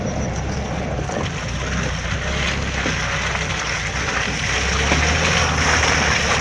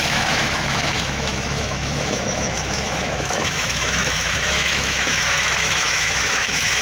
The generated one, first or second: second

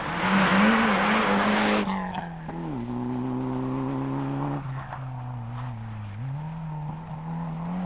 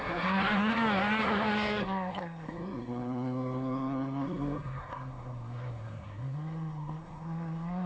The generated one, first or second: second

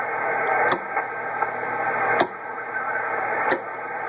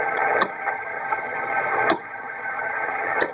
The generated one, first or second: second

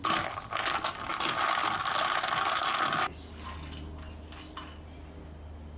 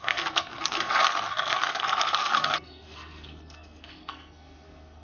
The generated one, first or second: second